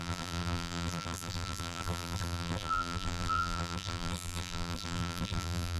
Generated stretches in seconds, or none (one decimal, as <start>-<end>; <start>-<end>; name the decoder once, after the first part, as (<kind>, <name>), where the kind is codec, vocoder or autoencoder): 0.0-5.8 (vocoder, BigVGAN v2)